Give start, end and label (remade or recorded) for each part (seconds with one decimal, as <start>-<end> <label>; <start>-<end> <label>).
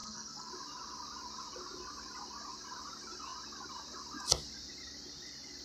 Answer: 0.0-0.5 remade; 0.5-5.6 recorded